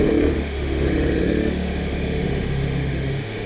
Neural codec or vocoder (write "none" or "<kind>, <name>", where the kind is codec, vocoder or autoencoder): autoencoder, DAC-VAE